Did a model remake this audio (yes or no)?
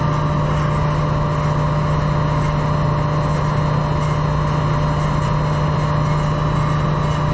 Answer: no